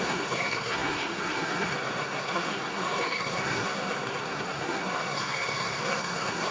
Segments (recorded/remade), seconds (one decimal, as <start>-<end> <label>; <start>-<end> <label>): 0.0-6.5 remade